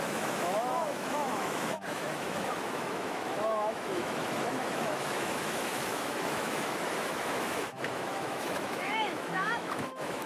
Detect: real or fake fake